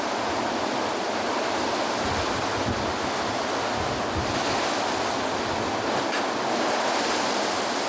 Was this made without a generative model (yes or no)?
yes